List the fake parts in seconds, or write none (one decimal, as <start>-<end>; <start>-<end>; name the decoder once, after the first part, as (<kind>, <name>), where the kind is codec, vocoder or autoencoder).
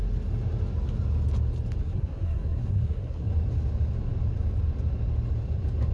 1.8-3.3 (codec, SNAC)